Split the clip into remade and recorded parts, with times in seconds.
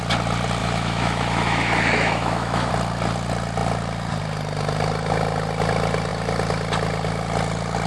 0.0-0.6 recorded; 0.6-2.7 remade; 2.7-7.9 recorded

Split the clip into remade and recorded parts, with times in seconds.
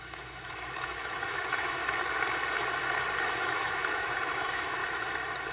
0.0-1.8 remade; 1.8-3.2 recorded; 3.2-4.8 remade; 4.8-5.5 recorded